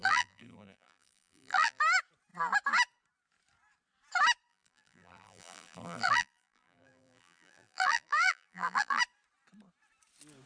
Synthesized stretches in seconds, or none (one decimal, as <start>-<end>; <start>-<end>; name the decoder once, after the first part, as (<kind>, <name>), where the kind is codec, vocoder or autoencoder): 0.0-1.8 (vocoder, BigVGAN v2); 4.5-9.0